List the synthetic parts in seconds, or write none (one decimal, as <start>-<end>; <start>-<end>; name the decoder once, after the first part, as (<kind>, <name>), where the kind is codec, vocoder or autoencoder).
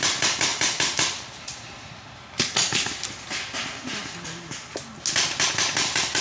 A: 0.5-2.3 (vocoder, BigVGAN v2)